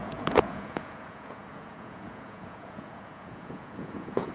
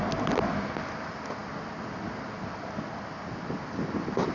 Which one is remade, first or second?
first